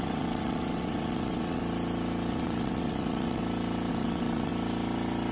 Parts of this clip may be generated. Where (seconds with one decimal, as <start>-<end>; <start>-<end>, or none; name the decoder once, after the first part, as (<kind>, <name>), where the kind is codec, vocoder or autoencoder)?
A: 0.0-1.6 (vocoder, WaveNeXt); 2.3-3.4; 3.9-4.5